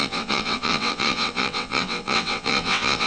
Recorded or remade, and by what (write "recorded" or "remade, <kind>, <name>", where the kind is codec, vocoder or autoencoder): remade, vocoder, WaveNeXt